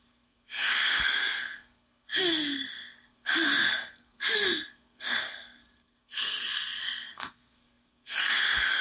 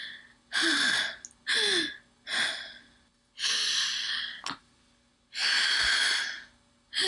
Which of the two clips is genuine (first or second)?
second